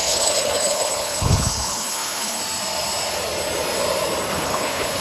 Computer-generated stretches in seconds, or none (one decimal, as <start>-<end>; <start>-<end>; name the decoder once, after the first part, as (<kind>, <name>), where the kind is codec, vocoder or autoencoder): 0.0-2.4 (codec, HILCodec); 4.3-5.0